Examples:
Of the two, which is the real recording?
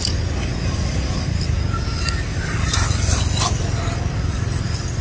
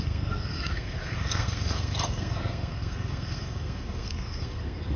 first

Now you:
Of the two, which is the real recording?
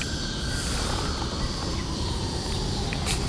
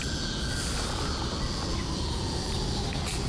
second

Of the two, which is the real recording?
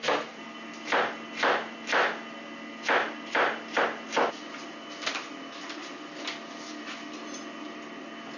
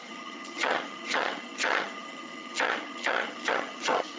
first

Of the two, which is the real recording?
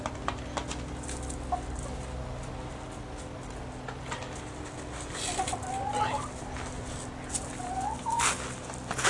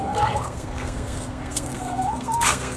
first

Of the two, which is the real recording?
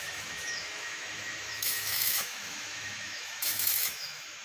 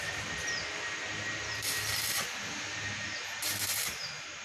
second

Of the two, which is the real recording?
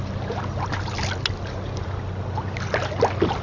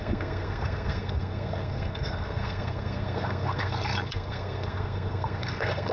first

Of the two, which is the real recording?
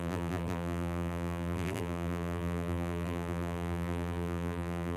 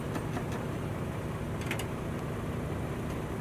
second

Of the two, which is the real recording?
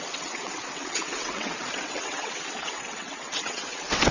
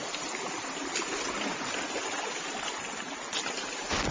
second